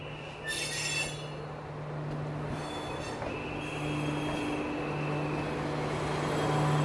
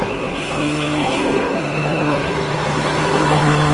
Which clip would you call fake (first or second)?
second